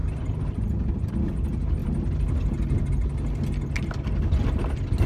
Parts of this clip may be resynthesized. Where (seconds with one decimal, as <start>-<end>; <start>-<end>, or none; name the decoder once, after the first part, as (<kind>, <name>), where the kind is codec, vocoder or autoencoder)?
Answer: none